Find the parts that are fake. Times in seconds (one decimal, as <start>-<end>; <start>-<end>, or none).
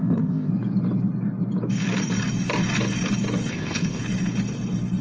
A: 0.0-0.5; 3.5-4.0